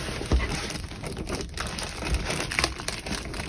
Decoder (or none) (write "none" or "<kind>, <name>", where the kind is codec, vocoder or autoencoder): vocoder, BigVGAN v2